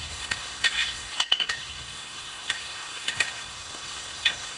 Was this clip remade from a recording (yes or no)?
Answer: yes